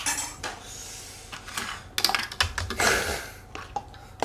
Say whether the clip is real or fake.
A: real